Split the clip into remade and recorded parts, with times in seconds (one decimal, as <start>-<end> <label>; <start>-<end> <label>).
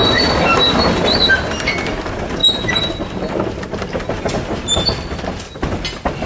0.0-6.3 recorded